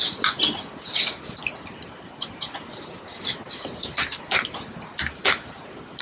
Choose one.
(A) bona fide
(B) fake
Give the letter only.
A